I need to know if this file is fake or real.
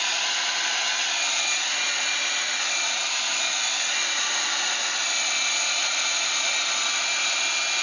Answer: real